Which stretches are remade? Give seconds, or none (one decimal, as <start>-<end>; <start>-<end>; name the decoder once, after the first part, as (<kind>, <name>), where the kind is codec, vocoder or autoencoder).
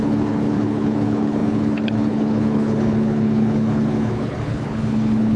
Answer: 0.0-5.4 (codec, HILCodec)